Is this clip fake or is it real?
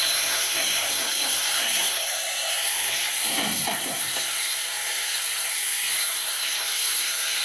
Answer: fake